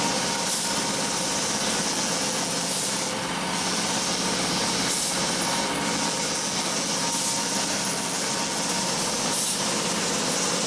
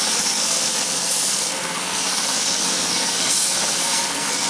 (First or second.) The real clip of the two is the first